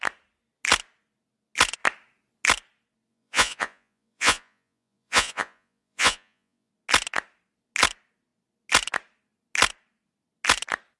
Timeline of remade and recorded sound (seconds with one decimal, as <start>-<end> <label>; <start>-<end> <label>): 0.0-3.1 recorded; 3.1-6.7 remade; 6.7-11.0 recorded